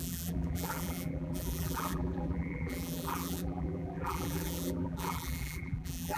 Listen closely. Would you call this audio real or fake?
fake